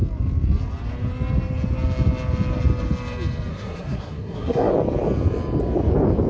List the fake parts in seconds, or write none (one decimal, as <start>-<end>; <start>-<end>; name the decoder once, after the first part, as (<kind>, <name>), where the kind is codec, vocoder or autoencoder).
3.5-4.7 (codec, SNAC)